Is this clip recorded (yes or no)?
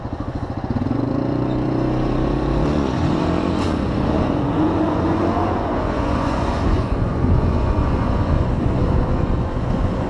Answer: no